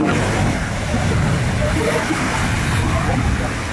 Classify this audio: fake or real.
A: real